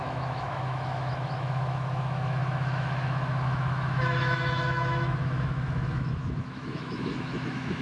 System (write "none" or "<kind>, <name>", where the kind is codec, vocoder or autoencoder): autoencoder, DAC-VAE